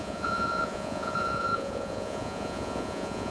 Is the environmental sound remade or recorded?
remade